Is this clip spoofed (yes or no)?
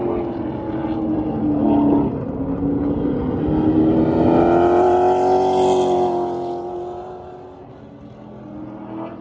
no